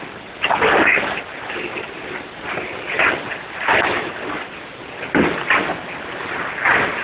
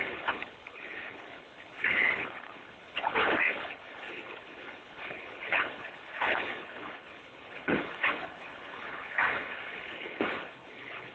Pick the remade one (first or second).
second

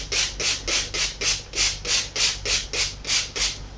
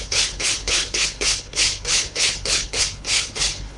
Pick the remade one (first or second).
second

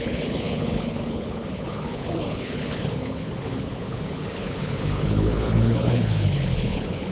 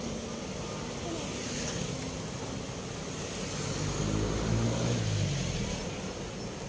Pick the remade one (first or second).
first